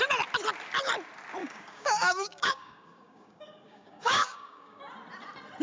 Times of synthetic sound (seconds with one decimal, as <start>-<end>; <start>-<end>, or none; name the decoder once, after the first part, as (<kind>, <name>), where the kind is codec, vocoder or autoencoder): 1.4-4.8 (codec, DAC)